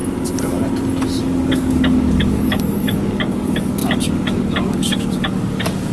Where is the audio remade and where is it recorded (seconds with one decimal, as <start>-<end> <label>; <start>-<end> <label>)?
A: 0.0-1.2 recorded; 1.2-5.9 remade